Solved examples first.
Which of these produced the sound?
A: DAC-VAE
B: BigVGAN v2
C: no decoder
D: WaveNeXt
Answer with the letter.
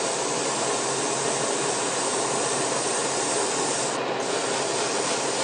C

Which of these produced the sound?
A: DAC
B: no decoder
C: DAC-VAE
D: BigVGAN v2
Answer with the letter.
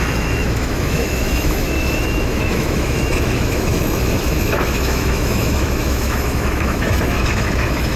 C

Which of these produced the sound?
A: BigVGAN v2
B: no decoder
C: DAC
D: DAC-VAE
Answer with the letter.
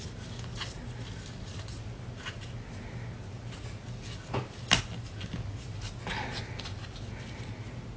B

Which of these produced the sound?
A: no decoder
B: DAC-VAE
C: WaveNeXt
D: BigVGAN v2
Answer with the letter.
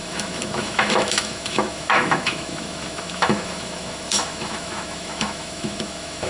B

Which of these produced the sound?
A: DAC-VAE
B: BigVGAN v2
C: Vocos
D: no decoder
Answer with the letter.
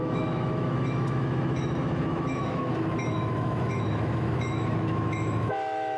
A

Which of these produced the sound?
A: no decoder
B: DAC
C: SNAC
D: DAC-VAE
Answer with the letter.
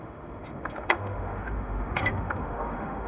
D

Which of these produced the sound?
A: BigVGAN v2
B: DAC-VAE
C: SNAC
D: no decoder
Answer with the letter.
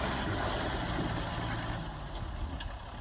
D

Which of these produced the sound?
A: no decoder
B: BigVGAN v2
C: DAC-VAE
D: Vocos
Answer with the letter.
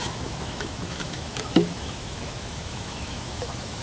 C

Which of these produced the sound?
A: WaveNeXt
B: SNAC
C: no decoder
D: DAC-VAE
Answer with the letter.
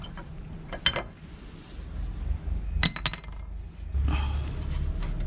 C